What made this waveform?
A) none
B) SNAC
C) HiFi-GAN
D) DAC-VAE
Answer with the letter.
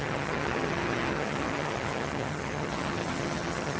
C